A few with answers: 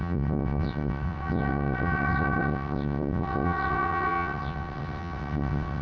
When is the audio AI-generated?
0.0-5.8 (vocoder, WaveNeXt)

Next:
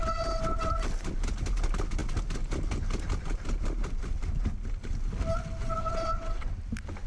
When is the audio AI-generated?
0.0-0.7 (vocoder, WaveNeXt); 5.6-6.5

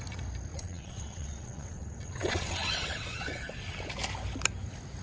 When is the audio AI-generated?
0.5-3.5 (vocoder, WaveNeXt)